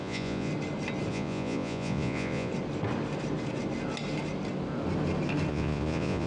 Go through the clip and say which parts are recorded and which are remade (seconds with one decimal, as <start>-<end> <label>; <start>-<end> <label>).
0.0-0.5 remade; 0.5-1.1 recorded; 1.1-2.5 remade; 2.5-5.5 recorded; 5.5-6.3 remade